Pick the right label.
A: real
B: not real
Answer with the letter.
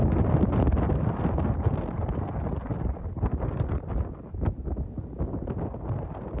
A